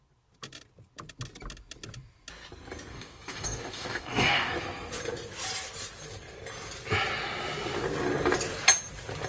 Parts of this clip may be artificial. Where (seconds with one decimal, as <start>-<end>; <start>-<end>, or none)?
2.9-4.5